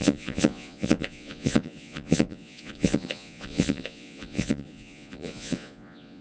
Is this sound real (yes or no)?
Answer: no